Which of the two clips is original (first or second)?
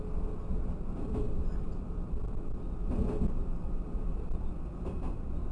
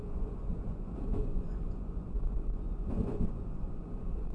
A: first